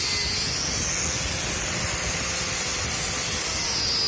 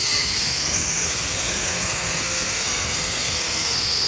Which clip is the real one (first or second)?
first